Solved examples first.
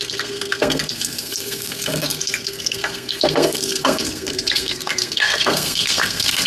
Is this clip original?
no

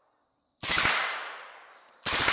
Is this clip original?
yes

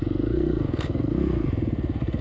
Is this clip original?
no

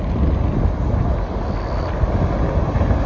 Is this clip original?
yes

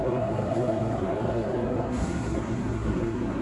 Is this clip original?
no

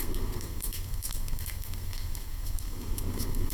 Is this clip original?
no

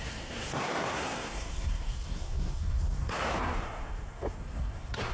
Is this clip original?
no